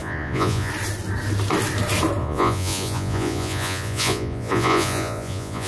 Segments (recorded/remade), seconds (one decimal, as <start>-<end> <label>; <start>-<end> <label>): 0.0-0.7 remade; 0.7-2.2 recorded; 2.2-5.7 remade